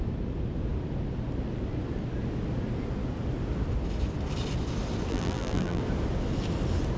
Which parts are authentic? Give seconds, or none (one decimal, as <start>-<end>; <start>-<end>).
0.0-5.1; 5.8-7.0